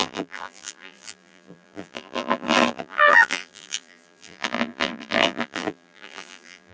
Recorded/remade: remade